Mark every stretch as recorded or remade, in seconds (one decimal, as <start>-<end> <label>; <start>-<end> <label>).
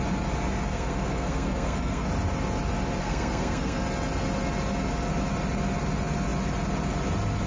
0.0-0.7 recorded; 0.7-2.1 remade; 2.1-3.0 recorded; 3.0-3.8 remade; 3.8-7.5 recorded